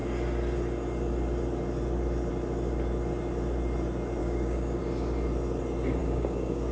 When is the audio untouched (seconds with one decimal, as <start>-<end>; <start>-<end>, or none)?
0.0-4.2; 4.8-6.0

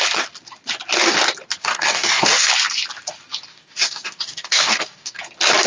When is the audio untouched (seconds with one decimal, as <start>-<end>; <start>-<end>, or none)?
0.0-1.6; 2.5-3.5; 5.2-5.7

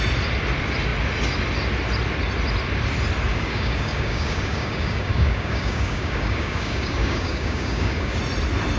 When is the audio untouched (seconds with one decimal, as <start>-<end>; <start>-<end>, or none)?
0.0-3.3; 8.2-8.8

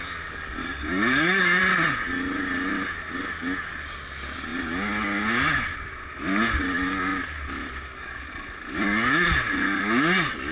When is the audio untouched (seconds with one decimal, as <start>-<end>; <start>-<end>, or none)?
0.0-0.6; 1.6-10.5

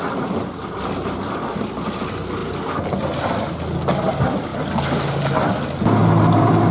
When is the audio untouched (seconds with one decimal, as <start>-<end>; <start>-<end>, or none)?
0.0-6.7

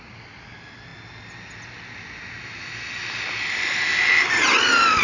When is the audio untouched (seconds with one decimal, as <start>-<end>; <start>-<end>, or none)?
0.0-5.0